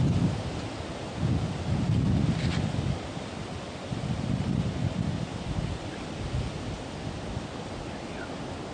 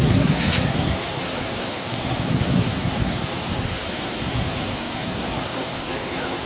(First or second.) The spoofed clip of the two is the second